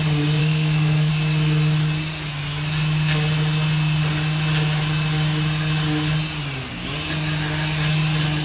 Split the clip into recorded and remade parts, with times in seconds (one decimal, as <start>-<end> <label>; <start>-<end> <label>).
0.0-0.4 recorded; 0.4-1.1 remade; 1.1-8.4 recorded